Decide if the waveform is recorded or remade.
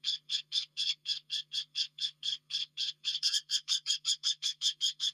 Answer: remade